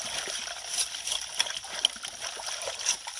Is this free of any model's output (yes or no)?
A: yes